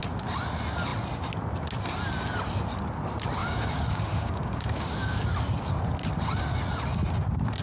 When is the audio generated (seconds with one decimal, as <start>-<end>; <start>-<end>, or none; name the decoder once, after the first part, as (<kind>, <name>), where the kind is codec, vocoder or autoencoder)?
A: 3.4-5.3 (codec, DAC)